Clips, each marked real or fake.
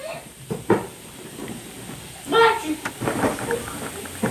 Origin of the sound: fake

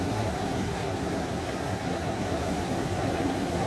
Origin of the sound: fake